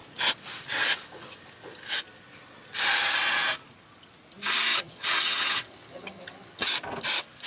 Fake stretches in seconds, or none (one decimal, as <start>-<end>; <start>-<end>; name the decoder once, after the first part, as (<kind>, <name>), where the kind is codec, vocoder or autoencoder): 4.7-6.7 (vocoder, HiFi-GAN)